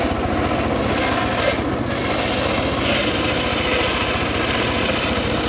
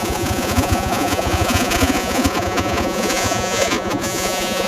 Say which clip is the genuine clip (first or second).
first